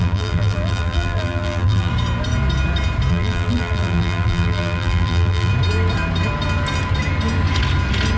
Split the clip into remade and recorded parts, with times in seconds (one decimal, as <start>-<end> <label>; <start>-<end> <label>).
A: 0.0-1.9 remade; 1.9-3.1 recorded; 3.1-5.5 remade; 5.5-8.2 recorded